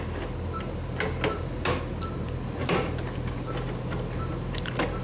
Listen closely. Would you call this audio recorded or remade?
recorded